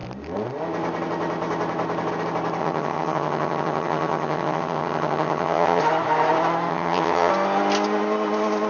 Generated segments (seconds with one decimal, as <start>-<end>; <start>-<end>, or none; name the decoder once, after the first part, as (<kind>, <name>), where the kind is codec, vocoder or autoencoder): 2.6-5.8 (vocoder, HiFi-GAN); 6.7-7.3